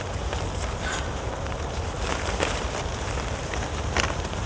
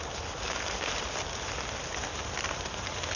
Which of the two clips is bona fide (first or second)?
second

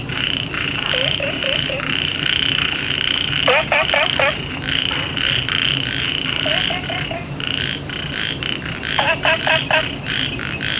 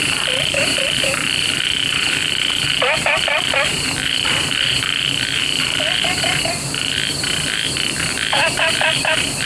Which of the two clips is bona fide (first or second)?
first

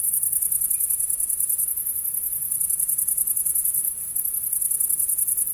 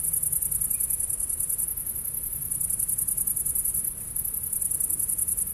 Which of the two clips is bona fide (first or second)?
second